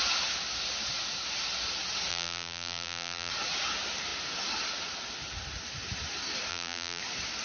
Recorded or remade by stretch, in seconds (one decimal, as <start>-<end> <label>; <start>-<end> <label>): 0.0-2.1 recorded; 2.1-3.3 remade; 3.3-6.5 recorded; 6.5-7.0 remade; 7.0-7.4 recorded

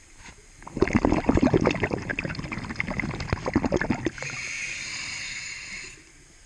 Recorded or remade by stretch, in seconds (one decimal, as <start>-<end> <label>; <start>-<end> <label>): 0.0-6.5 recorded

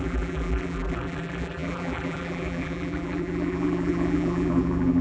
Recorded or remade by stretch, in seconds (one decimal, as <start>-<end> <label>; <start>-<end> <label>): 0.0-5.0 remade

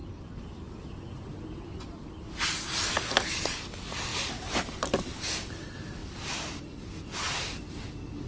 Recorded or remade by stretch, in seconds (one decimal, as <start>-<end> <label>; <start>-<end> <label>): 0.0-6.0 recorded; 6.0-6.6 remade; 6.6-8.3 recorded

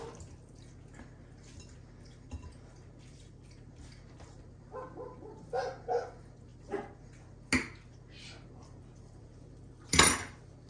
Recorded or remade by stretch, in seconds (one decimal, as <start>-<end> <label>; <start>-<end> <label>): 0.0-3.1 recorded; 3.1-3.7 remade; 3.7-8.6 recorded; 8.6-10.0 remade; 10.0-10.7 recorded

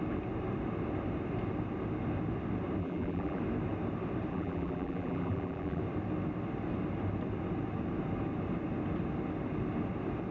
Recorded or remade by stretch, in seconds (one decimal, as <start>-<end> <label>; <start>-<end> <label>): 0.0-2.8 recorded; 2.8-3.4 remade; 3.4-4.3 recorded; 4.3-5.8 remade; 5.8-10.3 recorded